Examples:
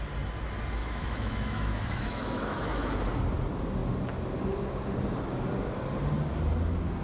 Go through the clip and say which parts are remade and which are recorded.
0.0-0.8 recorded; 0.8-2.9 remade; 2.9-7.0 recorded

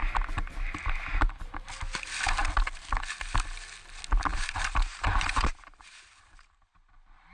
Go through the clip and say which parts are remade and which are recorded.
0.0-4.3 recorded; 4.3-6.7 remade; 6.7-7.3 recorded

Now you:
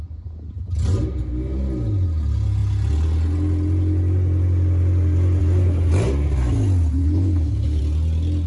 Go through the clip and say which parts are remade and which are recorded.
0.0-7.0 recorded; 7.0-7.8 remade; 7.8-8.5 recorded

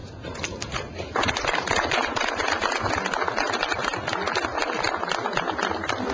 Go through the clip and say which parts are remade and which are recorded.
0.0-2.9 remade; 2.9-6.1 recorded

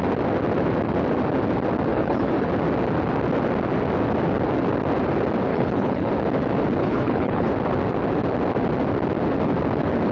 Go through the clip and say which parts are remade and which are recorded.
0.0-1.9 recorded; 1.9-2.5 remade; 2.5-5.5 recorded; 5.5-6.1 remade; 6.1-6.8 recorded; 6.8-7.5 remade; 7.5-10.1 recorded

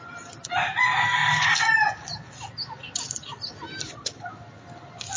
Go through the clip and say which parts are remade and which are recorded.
0.0-5.2 recorded

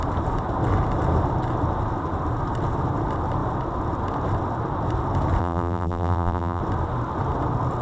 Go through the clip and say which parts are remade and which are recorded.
0.0-5.4 recorded; 5.4-6.6 remade; 6.6-7.8 recorded

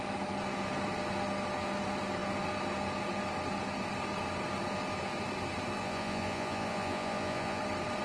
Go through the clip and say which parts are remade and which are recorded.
0.0-5.8 recorded; 5.8-7.6 remade; 7.6-8.0 recorded